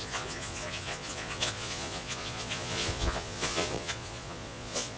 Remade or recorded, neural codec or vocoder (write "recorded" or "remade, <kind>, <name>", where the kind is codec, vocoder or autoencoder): remade, vocoder, Vocos